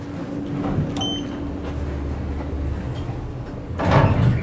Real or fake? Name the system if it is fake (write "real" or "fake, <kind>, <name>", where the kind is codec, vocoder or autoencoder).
real